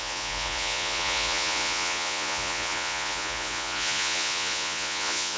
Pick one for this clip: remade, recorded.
remade